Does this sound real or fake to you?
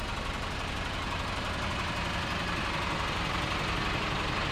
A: real